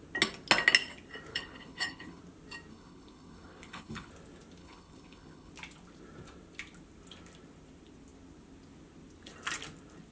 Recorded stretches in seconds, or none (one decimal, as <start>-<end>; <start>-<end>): 0.0-1.3; 2.2-2.7; 4.1-4.6; 5.5-10.1